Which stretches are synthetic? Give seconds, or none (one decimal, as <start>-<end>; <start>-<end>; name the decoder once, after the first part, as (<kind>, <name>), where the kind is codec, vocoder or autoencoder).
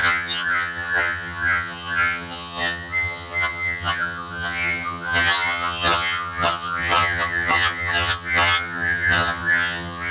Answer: 0.0-10.1 (vocoder, HiFi-GAN)